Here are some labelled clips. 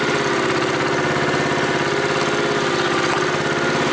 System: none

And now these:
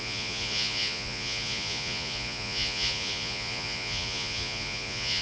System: vocoder, Vocos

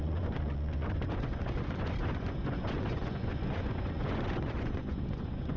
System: vocoder, Vocos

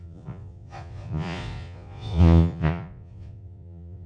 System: vocoder, Vocos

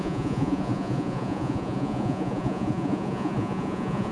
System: vocoder, Vocos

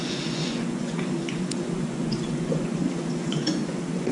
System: vocoder, Vocos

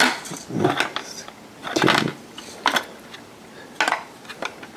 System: none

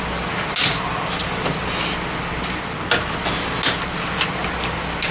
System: none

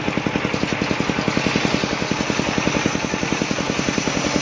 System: none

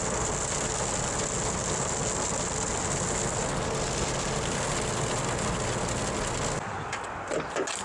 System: none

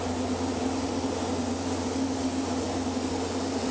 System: none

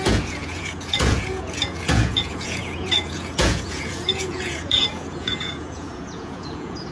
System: vocoder, Vocos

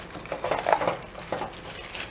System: none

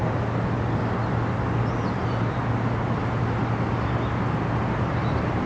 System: none